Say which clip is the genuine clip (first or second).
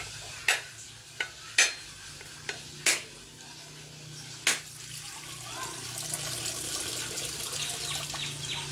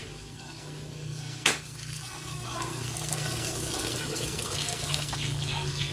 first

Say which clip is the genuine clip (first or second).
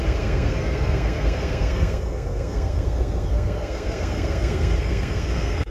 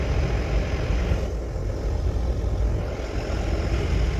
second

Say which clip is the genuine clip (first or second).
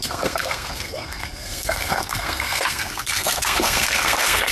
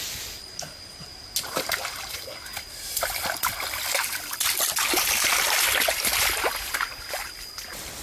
second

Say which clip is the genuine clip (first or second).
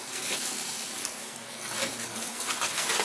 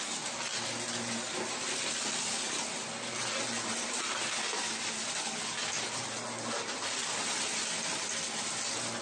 second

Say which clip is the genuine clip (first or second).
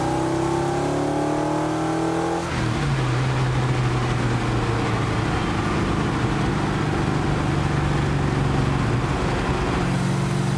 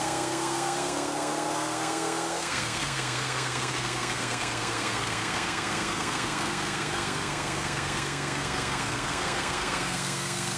first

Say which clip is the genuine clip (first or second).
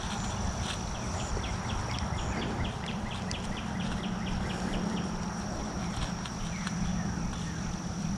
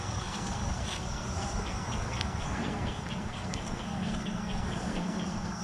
first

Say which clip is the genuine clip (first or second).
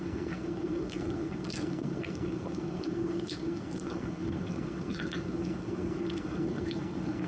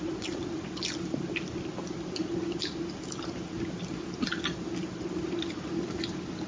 second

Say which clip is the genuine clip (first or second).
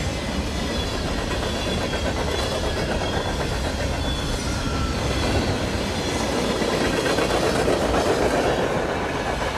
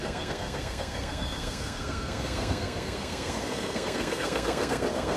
first